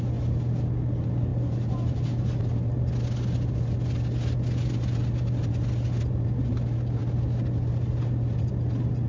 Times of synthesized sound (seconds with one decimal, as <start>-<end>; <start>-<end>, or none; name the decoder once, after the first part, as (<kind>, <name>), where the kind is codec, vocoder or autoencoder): none